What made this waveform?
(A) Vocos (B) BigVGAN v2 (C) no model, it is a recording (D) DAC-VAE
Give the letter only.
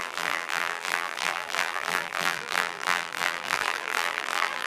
B